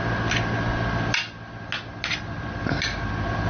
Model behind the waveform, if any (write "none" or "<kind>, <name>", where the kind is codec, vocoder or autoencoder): none